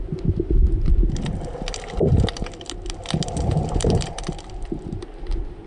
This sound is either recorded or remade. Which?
recorded